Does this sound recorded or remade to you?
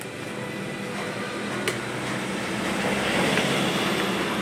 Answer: recorded